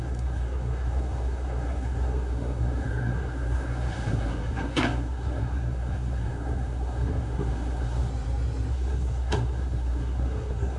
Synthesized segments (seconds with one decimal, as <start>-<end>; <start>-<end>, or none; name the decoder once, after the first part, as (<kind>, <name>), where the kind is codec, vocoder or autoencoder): 0.0-8.1 (codec, SNAC); 8.7-10.8